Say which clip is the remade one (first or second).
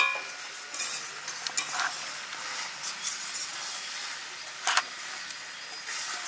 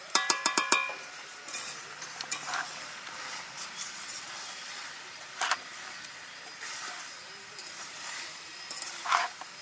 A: second